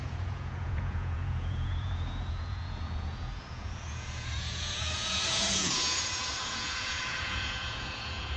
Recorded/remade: remade